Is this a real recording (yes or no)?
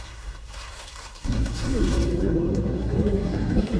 no